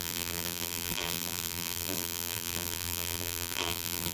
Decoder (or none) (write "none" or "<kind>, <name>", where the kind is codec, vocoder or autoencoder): vocoder, BigVGAN v2